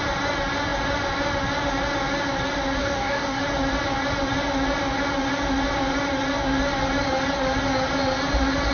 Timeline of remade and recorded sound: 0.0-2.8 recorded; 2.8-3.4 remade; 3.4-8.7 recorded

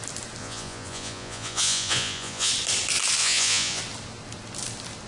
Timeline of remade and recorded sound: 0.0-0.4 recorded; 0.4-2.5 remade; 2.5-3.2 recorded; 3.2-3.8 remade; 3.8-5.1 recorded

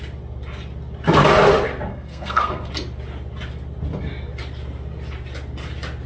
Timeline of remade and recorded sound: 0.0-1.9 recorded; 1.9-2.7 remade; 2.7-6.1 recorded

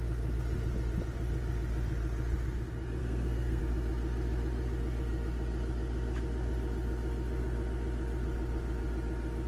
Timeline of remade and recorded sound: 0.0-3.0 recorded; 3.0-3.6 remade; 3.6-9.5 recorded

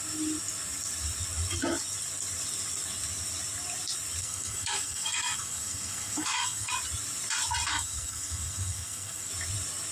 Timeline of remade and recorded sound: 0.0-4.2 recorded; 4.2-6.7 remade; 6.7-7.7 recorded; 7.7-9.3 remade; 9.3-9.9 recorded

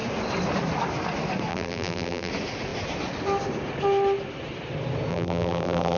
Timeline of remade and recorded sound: 0.0-1.5 recorded; 1.5-2.3 remade; 2.3-5.1 recorded; 5.1-6.0 remade

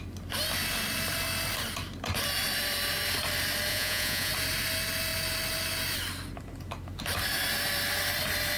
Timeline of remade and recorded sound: 0.0-3.7 recorded; 3.7-4.3 remade; 4.3-8.6 recorded